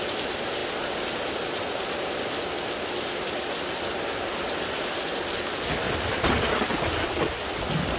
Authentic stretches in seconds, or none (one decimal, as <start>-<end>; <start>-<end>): 0.0-8.0